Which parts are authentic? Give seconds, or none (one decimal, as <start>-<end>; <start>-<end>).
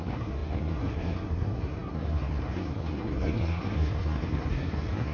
none